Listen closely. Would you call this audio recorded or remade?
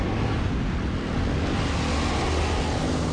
recorded